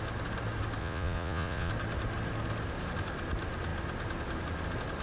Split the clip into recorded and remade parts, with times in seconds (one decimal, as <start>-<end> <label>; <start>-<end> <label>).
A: 0.0-0.8 recorded; 0.8-1.7 remade; 1.7-5.0 recorded